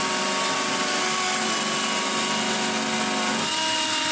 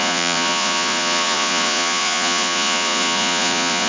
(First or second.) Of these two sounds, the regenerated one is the second